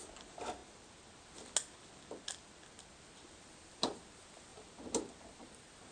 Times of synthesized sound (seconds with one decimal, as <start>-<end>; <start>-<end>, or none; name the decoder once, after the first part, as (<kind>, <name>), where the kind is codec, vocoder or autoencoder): none